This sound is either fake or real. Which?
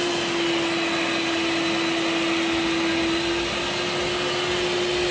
real